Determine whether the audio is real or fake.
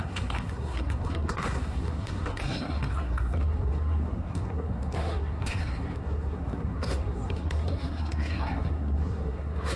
fake